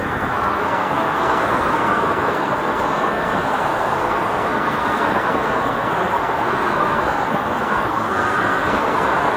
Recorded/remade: remade